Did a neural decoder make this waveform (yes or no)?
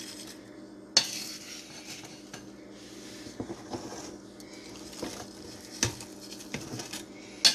no